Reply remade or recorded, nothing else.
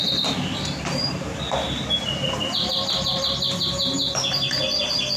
recorded